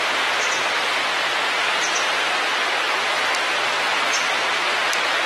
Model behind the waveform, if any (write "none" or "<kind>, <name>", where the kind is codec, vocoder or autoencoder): vocoder, BigVGAN v2